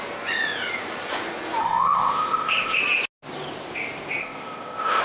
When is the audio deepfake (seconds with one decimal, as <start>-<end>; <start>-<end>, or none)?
1.6-2.8; 4.2-5.0